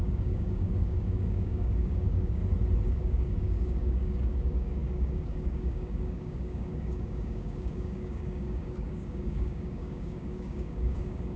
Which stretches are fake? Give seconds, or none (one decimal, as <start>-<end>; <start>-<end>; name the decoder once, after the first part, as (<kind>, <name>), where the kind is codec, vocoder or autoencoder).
0.0-2.4 (codec, DAC); 2.9-11.4

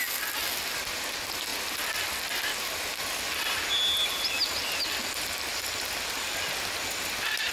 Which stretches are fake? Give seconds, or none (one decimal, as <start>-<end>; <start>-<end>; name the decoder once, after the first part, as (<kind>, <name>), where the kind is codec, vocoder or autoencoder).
none

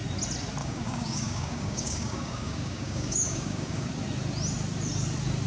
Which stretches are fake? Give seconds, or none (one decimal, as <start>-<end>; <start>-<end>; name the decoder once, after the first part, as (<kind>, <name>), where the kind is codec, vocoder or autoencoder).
0.6-3.9 (codec, DAC)

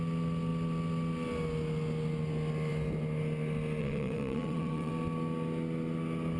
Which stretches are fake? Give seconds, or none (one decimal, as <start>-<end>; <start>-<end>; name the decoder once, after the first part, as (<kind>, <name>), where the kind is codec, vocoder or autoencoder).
3.8-4.9 (vocoder, WaveNeXt)

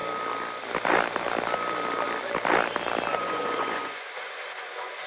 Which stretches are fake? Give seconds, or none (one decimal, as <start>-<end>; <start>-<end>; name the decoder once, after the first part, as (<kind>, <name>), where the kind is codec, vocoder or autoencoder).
3.1-5.1 (vocoder, Vocos)

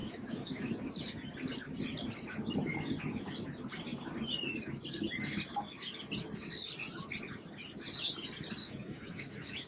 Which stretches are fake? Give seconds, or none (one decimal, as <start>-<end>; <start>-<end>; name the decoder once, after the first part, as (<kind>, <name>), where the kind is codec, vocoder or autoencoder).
0.0-0.9 (autoencoder, DAC-VAE); 8.6-9.7

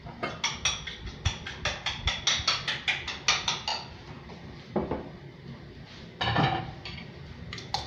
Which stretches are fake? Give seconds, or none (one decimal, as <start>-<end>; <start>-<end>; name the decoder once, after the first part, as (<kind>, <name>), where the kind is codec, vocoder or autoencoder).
none

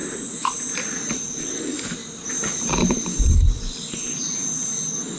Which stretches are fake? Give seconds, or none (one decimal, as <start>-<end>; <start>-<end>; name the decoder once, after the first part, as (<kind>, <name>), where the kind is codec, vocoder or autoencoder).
0.0-1.1 (vocoder, BigVGAN v2); 2.0-3.9